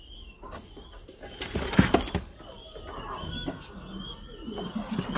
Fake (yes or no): no